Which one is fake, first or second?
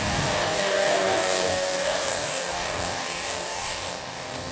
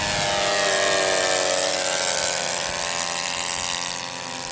first